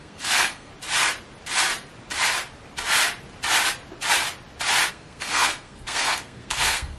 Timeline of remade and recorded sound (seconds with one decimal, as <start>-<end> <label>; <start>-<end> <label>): 0.0-0.7 remade; 0.7-4.9 recorded; 4.9-7.0 remade